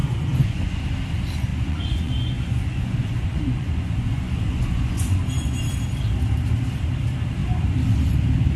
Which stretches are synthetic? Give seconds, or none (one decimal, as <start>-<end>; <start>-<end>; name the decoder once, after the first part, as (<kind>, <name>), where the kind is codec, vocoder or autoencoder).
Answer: 0.0-0.8 (vocoder, Vocos); 1.5-5.6